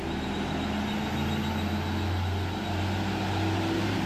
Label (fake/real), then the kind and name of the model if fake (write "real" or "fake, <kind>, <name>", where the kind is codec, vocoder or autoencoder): real